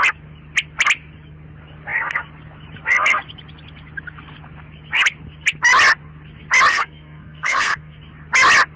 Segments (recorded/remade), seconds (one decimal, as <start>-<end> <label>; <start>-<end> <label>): 0.0-6.7 recorded; 6.7-8.0 remade; 8.0-8.8 recorded